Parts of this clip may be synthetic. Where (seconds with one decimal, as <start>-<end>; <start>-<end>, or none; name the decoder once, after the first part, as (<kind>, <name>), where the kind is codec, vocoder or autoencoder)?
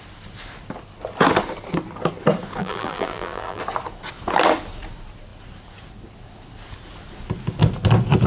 2.6-3.6 (vocoder, BigVGAN v2)